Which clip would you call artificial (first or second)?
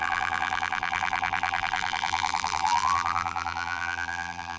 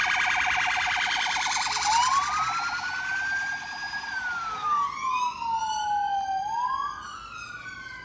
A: first